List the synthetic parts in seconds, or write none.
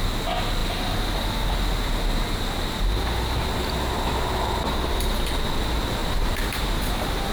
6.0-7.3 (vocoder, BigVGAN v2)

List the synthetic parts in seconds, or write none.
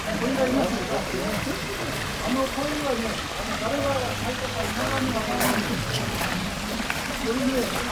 none